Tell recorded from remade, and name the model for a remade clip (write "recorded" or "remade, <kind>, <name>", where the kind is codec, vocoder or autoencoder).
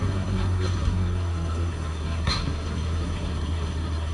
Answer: remade, codec, SNAC